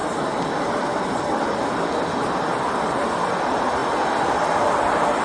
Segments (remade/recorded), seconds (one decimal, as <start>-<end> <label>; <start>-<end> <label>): 0.0-5.2 recorded